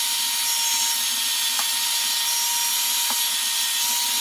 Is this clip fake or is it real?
real